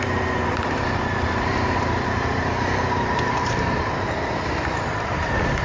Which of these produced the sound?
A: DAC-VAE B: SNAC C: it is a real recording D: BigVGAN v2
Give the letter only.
D